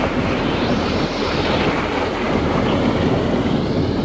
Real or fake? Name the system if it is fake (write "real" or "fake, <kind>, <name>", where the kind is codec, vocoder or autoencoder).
fake, vocoder, BigVGAN v2